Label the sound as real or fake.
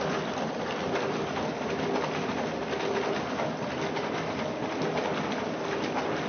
real